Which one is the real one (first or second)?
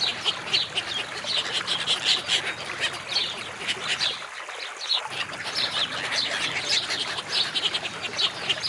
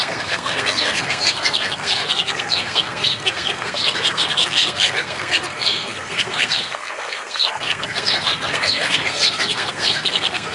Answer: first